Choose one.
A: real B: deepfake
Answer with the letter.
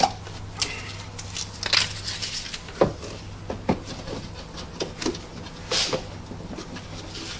A